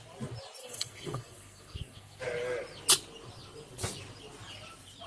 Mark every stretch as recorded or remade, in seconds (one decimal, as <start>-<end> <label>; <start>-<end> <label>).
0.0-0.6 recorded; 0.6-2.2 remade; 2.2-5.1 recorded